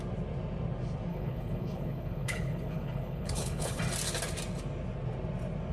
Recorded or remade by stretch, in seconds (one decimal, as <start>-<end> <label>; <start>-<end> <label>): 0.0-1.1 recorded; 1.1-3.8 remade; 3.8-5.7 recorded